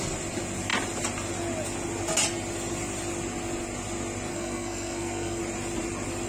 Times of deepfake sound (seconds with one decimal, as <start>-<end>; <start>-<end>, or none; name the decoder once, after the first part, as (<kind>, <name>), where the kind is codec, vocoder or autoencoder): 4.3-5.4 (codec, SNAC)